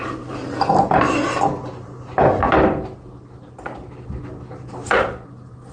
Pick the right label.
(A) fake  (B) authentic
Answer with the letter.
B